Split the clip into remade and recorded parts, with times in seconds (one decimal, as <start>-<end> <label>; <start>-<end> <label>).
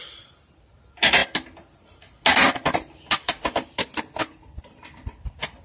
0.0-5.6 recorded